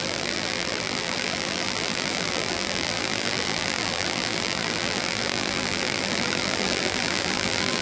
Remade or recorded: remade